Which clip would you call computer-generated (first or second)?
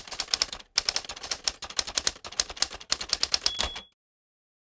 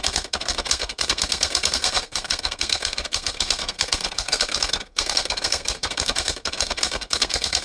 second